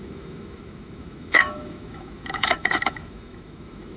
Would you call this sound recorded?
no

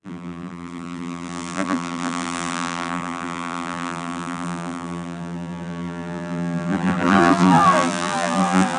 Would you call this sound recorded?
no